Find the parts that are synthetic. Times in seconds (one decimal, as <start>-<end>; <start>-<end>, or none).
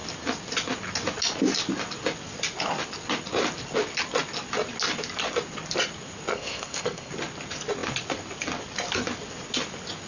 6.3-7.1